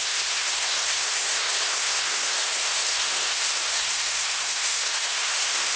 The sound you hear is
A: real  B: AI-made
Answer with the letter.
B